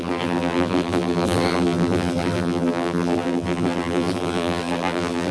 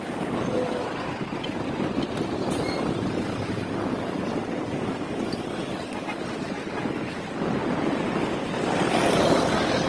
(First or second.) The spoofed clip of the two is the first